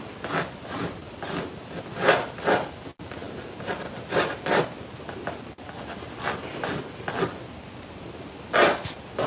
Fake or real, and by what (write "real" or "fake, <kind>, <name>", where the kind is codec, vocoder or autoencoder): real